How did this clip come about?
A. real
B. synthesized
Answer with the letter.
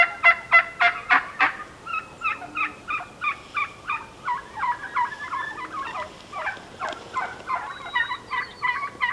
A